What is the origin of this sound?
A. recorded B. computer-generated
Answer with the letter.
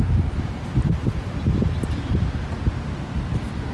A